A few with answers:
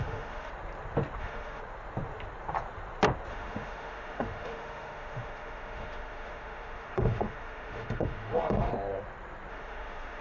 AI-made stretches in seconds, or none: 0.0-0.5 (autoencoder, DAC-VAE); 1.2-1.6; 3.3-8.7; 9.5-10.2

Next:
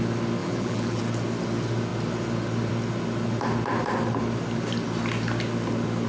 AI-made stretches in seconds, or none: 0.4-1.0 (vocoder, BigVGAN v2)

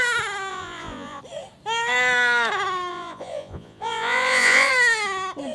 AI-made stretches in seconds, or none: 0.5-1.2 (vocoder, Vocos); 2.9-4.7

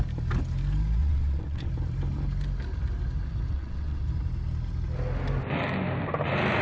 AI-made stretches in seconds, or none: 1.0-1.7 (vocoder, WaveNeXt); 3.5-4.0

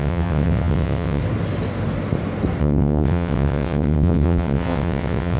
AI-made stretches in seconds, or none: 0.0-1.2 (vocoder, WaveNeXt); 2.6-5.4